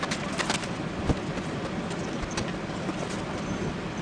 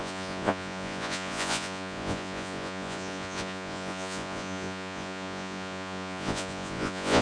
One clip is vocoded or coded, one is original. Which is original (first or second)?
first